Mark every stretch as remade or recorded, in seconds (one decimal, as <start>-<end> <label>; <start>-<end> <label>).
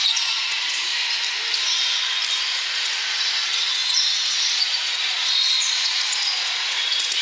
0.0-0.9 remade; 0.9-2.5 recorded; 2.5-7.2 remade